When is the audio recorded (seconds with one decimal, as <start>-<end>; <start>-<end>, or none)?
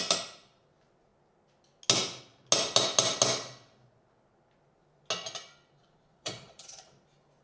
0.0-5.8; 6.9-7.4